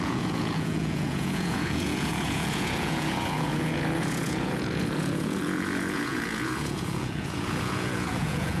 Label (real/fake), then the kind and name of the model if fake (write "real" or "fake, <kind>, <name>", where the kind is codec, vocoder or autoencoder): fake, vocoder, Vocos